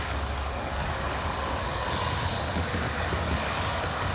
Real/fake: fake